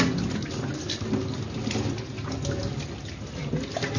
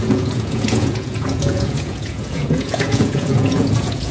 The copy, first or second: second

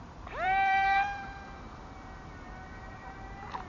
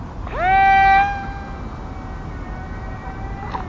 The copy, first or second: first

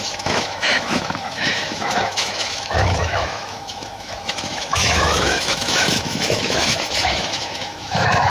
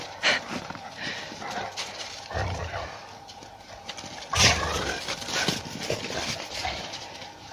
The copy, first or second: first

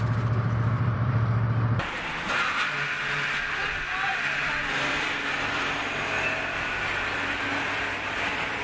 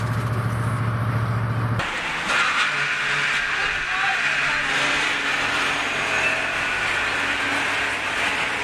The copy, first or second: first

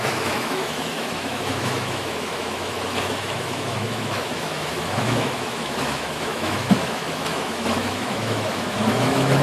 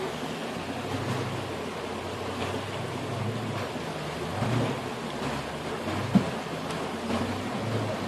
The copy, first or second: first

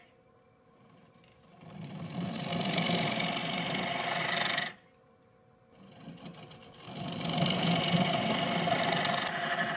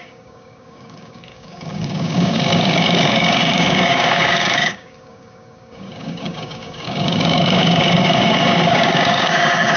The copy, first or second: second